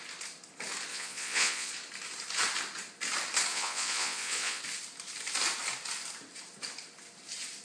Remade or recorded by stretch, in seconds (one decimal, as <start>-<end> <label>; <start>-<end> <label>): 0.0-0.9 recorded; 0.9-1.7 remade; 1.7-3.5 recorded; 3.5-4.6 remade; 4.6-7.6 recorded